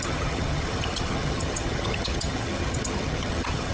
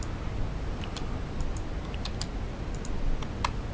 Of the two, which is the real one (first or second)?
second